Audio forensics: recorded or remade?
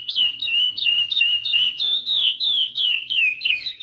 remade